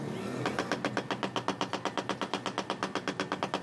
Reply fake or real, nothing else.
real